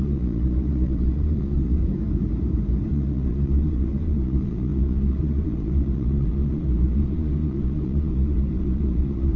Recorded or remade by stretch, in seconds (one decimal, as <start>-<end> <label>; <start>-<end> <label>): 0.0-1.8 remade; 1.8-2.9 recorded; 2.9-9.4 remade